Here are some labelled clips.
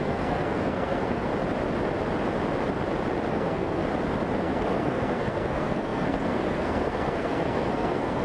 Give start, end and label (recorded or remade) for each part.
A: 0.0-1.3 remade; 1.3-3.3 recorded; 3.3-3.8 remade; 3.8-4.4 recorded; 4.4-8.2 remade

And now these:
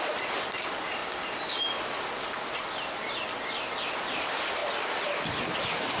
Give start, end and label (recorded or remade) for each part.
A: 0.0-6.0 recorded

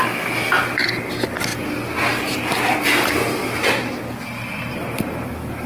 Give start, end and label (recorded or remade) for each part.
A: 0.0-5.7 recorded

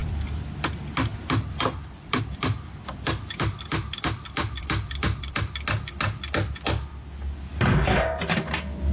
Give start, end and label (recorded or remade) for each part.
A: 0.0-0.7 remade; 0.7-1.1 recorded; 1.1-5.4 remade; 5.4-8.9 recorded